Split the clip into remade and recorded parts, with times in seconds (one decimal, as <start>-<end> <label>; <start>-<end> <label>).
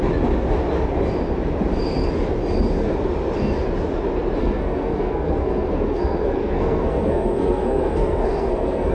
0.0-4.4 recorded; 4.4-8.9 remade